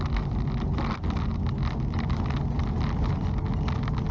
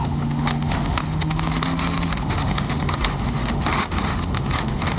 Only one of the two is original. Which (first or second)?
first